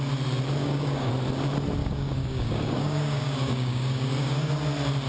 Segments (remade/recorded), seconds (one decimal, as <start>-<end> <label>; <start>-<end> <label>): 0.0-0.6 recorded; 0.6-1.1 remade; 1.1-1.8 recorded; 1.8-4.5 remade; 4.5-5.1 recorded